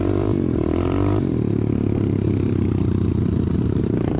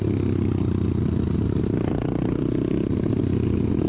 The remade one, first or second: first